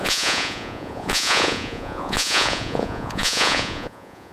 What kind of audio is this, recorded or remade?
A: remade